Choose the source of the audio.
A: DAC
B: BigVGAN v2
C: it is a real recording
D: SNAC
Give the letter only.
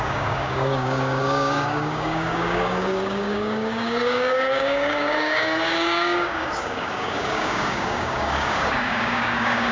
A